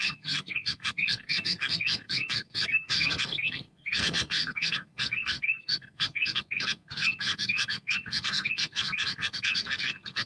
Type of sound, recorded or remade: remade